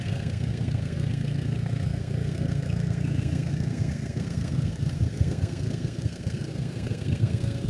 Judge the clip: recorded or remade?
remade